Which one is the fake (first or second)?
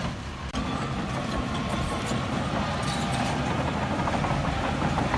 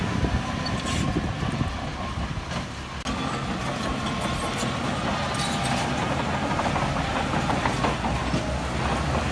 first